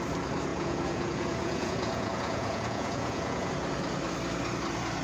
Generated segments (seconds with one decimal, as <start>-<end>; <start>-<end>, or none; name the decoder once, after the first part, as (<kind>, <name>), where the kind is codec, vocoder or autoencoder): 0.5-3.5 (vocoder, Vocos)

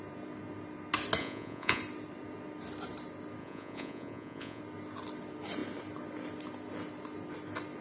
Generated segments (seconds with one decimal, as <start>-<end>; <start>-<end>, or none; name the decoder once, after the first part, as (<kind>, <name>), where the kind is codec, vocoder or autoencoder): 1.2-1.8 (vocoder, Vocos); 3.4-4.6

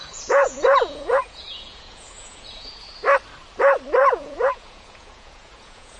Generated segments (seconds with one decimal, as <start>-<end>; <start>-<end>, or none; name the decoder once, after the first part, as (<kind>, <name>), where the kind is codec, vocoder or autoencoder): 0.0-2.7 (vocoder, Vocos); 4.0-6.0

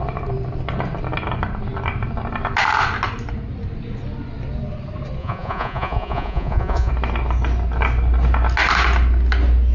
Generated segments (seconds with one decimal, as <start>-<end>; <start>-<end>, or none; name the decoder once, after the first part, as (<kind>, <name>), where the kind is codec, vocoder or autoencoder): 5.2-6.9 (vocoder, Vocos)